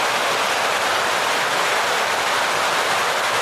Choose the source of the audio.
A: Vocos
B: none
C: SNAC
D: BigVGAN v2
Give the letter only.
B